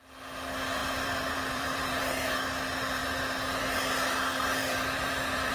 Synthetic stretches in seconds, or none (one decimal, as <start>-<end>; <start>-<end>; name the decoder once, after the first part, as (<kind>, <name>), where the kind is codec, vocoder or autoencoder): 0.8-2.0 (vocoder, BigVGAN v2); 4.6-5.5